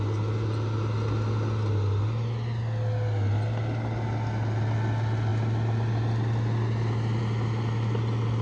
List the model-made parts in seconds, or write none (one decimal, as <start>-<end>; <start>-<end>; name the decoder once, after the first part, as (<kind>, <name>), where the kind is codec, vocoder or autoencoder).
none